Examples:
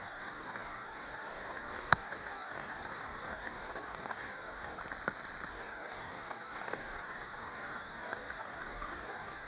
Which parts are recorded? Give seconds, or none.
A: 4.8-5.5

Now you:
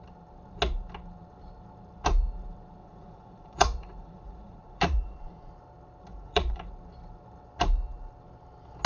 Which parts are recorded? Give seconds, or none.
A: 0.0-2.8; 5.5-6.1; 6.7-8.9

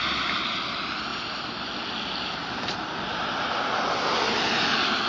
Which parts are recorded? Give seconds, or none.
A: 0.0-5.1

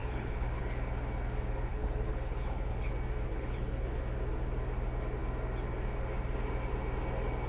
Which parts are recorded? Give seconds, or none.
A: 0.6-1.7; 2.9-3.3; 4.0-7.5

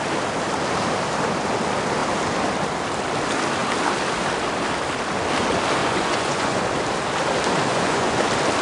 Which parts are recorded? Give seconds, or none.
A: 0.0-5.8; 6.6-7.7; 8.2-8.6

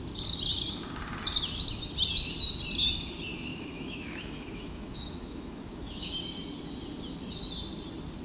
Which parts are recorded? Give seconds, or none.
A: 0.0-3.5; 6.1-8.2

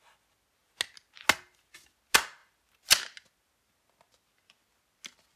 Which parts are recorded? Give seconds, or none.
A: 0.0-5.4